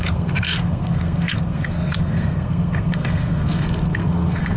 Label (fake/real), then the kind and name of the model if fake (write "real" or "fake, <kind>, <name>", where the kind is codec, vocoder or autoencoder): fake, codec, SNAC